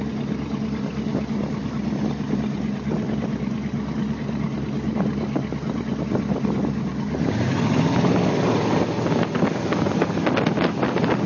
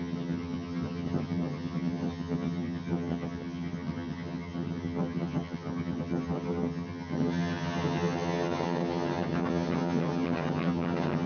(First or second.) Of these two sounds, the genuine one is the first